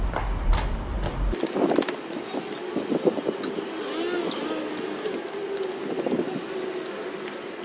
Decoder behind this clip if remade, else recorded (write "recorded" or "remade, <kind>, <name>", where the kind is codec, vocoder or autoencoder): recorded